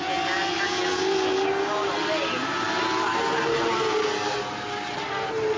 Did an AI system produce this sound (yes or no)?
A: no